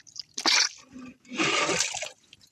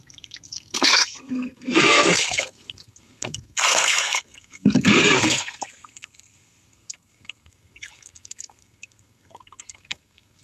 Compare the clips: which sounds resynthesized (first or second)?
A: second